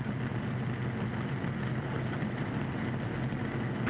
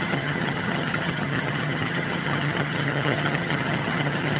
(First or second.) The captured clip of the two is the first